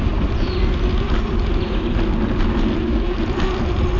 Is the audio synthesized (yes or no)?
no